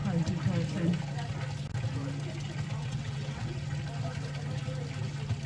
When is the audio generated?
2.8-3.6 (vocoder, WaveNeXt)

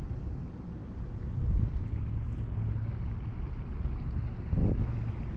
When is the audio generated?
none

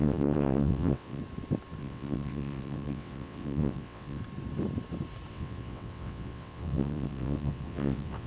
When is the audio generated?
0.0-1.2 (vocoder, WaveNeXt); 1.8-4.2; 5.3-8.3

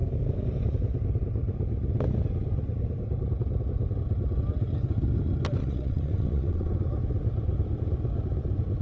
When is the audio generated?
5.6-6.7 (vocoder, WaveNeXt)

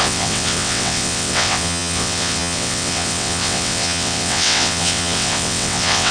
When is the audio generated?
0.0-6.1 (vocoder, WaveNeXt)

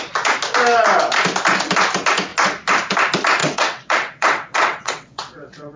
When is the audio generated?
3.4-5.8 (vocoder, WaveNeXt)